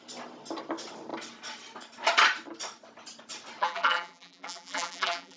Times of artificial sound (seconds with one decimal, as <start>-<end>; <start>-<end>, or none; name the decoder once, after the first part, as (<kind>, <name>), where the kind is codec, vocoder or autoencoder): 3.6-5.4 (vocoder, BigVGAN v2)